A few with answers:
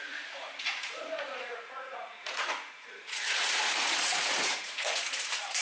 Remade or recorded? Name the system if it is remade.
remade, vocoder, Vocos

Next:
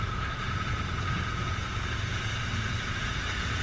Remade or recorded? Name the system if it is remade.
remade, vocoder, Vocos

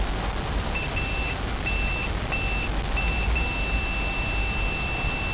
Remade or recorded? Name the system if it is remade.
recorded